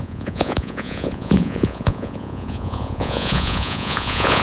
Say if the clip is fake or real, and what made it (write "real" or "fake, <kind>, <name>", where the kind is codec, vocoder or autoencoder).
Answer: fake, vocoder, Vocos